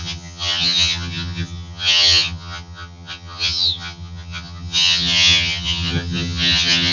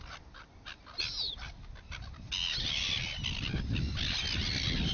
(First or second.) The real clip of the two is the second